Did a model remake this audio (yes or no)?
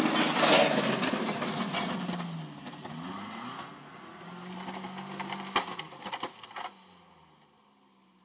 no